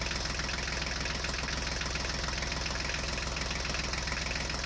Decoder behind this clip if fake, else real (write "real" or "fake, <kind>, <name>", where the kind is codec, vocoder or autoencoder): real